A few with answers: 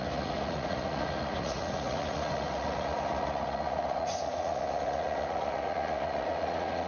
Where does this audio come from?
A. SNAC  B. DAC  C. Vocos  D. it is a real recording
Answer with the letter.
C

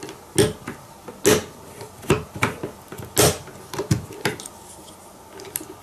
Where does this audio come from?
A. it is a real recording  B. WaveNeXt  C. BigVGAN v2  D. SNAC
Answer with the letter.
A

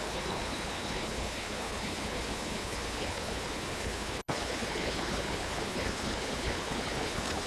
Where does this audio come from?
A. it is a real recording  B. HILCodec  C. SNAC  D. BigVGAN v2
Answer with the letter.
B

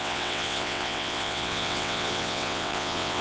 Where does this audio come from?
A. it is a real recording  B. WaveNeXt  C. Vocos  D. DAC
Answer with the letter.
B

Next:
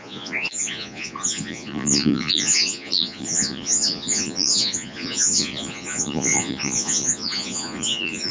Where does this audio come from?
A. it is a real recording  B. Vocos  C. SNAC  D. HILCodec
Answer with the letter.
B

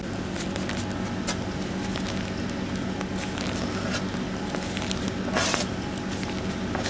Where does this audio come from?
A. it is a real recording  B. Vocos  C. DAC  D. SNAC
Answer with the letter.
A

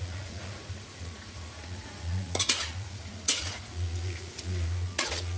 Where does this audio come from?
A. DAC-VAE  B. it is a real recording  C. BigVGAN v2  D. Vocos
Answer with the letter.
D